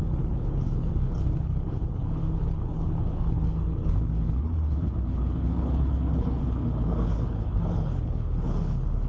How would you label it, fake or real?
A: fake